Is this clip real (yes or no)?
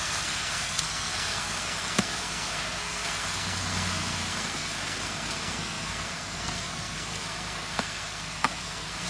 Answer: no